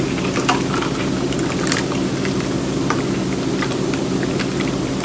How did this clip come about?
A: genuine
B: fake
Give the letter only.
A